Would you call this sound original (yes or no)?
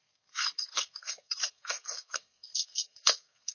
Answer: no